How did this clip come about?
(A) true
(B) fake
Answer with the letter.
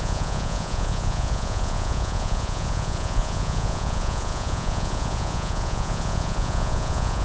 B